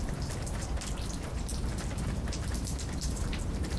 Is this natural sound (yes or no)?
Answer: no